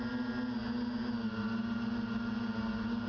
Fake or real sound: real